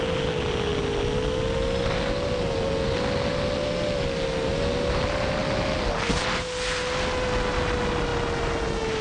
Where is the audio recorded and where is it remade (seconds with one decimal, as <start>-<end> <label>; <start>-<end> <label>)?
0.0-9.0 recorded